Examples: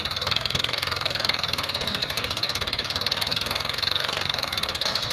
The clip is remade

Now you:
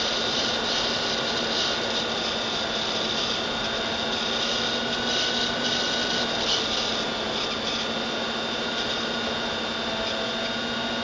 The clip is recorded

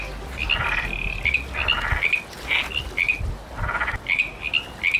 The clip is recorded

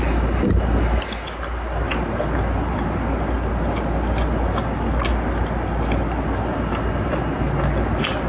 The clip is recorded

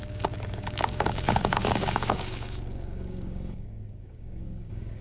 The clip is remade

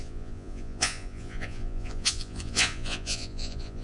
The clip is remade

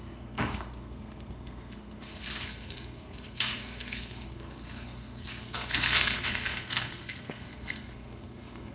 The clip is remade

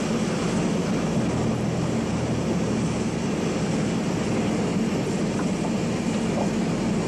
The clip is recorded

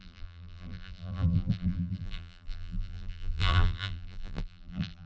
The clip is remade